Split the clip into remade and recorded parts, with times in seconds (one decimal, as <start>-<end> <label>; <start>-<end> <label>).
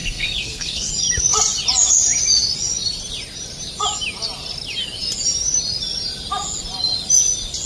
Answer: 0.0-0.9 remade; 0.9-7.7 recorded